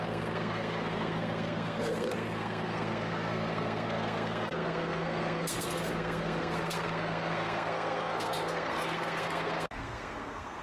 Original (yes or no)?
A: no